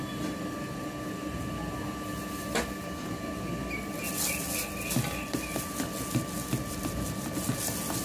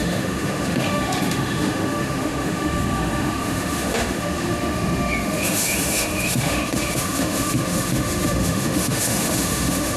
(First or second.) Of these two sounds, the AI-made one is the second